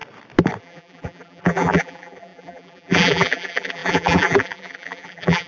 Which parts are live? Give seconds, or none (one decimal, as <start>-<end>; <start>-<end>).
0.0-0.6